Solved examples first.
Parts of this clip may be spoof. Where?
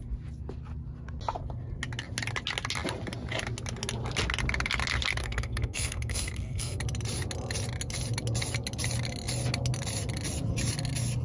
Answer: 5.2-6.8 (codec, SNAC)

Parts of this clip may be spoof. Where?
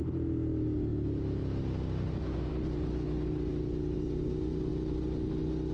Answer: none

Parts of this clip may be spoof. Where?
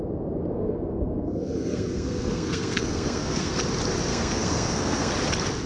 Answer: 0.5-3.6 (codec, SNAC); 4.1-5.1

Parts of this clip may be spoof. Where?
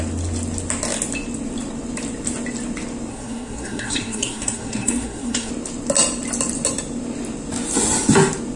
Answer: 3.1-5.5 (codec, SNAC)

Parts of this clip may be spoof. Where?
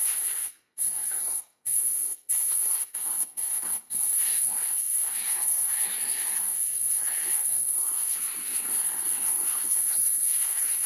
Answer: 0.0-10.9 (codec, SNAC)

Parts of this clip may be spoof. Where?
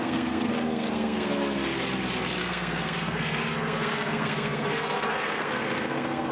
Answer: 0.0-1.7 (codec, SNAC); 2.4-6.3